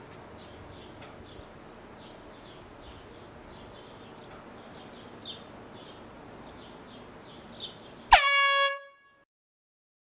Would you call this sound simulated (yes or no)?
no